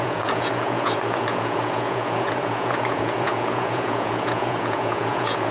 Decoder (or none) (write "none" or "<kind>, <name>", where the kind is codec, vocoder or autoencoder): vocoder, Vocos